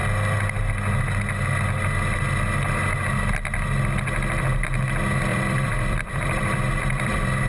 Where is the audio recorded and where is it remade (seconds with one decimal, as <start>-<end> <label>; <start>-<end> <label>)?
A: 0.0-5.3 recorded; 5.3-7.5 remade